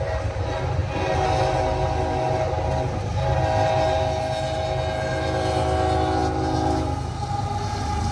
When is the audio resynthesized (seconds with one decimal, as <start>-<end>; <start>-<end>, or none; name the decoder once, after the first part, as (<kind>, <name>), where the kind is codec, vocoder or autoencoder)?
none